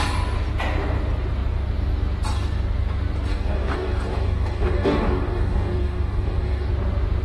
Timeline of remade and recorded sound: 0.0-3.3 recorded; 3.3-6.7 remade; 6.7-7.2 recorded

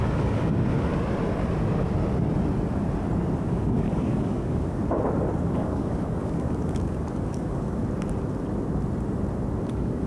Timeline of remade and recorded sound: 0.0-0.9 remade; 0.9-3.4 recorded; 3.4-4.8 remade; 4.8-5.4 recorded; 5.4-7.8 remade; 7.8-9.7 recorded; 9.7-10.1 remade